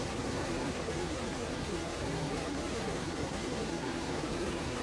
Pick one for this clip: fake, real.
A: fake